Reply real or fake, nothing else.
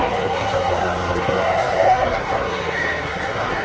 fake